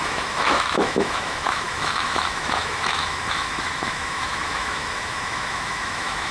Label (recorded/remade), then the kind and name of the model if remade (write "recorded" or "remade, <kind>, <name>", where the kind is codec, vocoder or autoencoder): remade, autoencoder, DAC-VAE